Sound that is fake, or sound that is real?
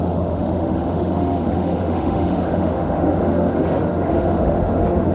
fake